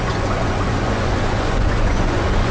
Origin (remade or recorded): remade